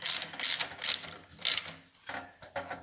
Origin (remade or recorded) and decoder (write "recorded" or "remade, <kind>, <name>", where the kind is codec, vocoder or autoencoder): recorded